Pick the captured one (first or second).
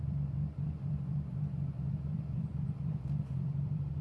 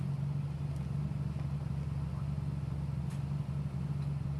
second